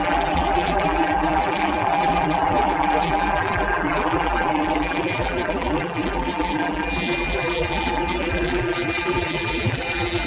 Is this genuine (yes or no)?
no